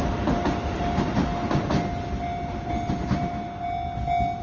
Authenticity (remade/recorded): recorded